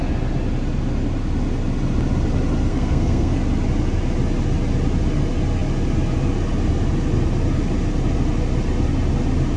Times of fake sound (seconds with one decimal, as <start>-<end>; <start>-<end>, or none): 2.7-3.4